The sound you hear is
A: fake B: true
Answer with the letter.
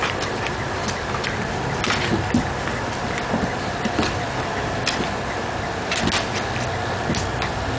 B